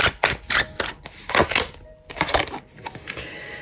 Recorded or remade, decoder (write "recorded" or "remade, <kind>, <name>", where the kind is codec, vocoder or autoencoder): recorded